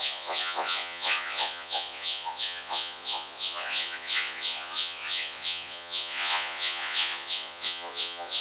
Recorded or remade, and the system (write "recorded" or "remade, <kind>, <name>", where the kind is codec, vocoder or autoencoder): remade, vocoder, Vocos